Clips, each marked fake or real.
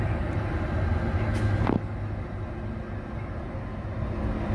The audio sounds real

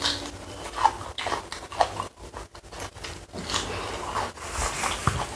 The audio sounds real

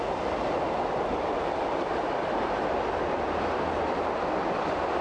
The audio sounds real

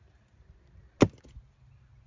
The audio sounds real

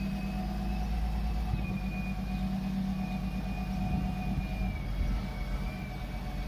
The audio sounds real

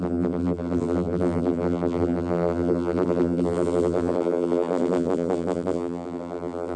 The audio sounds fake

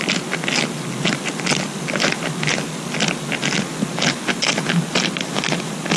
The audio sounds real